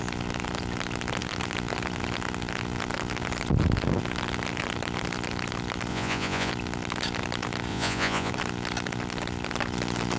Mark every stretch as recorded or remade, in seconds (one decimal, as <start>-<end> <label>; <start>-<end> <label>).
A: 0.0-5.9 recorded; 5.9-6.5 remade; 6.5-7.7 recorded; 7.7-8.3 remade; 8.3-10.2 recorded